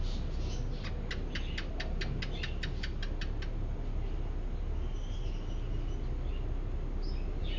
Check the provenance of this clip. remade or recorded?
recorded